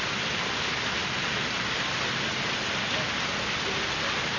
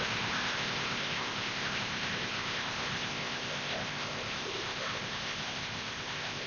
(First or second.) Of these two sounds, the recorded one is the first